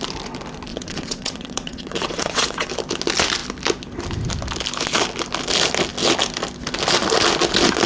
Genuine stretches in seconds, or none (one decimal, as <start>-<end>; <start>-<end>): 0.0-0.7; 2.7-7.9

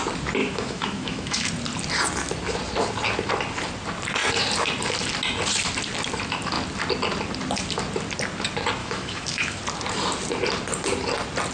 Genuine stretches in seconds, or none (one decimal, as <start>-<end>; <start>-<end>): 0.0-0.4; 1.5-8.8; 9.6-11.5

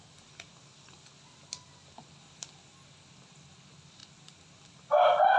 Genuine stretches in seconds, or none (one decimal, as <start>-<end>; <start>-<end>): 0.0-5.4

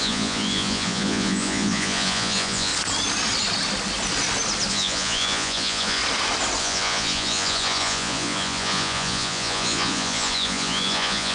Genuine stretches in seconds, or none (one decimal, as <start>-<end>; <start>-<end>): 2.7-4.7; 6.0-6.6

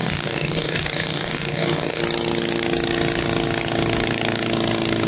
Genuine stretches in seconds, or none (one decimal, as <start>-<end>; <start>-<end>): 2.0-5.1